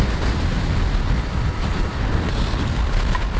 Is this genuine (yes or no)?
yes